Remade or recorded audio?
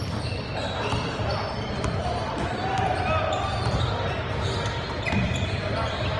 recorded